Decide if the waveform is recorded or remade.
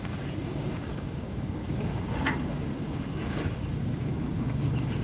remade